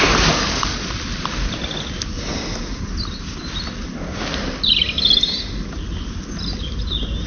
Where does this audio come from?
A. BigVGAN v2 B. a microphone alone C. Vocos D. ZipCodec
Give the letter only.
B